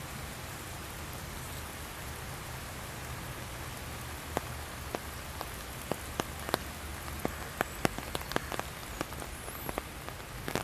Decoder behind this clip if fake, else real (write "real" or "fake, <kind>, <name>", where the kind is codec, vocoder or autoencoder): real